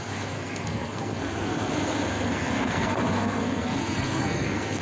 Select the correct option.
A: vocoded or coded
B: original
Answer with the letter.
A